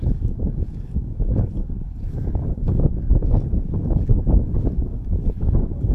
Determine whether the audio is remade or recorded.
remade